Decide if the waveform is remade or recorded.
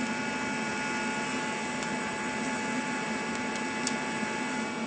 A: recorded